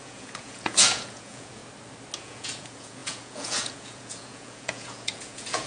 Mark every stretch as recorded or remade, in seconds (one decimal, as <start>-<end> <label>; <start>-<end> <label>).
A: 0.0-1.6 remade; 1.6-2.2 recorded; 2.2-5.7 remade